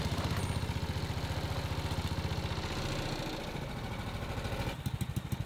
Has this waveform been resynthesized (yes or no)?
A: no